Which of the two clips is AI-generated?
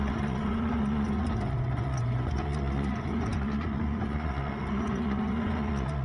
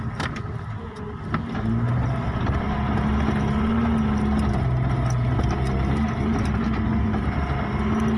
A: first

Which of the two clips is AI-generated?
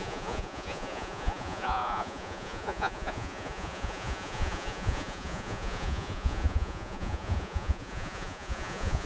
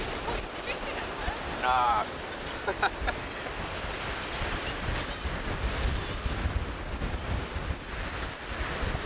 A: first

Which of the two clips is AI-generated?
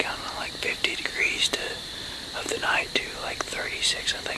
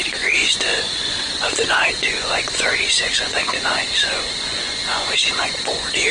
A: second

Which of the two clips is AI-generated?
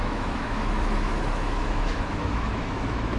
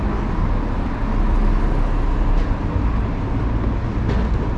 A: first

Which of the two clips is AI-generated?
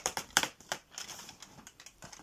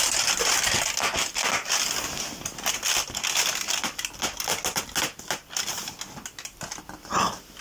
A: first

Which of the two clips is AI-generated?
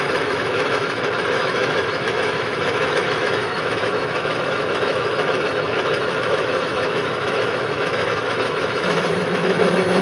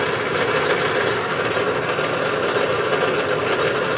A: first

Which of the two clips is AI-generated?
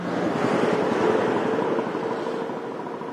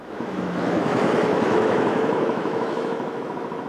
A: second